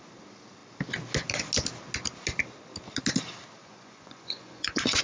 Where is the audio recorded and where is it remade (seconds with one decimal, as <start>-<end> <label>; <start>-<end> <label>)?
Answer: 0.0-3.6 recorded; 3.6-5.0 remade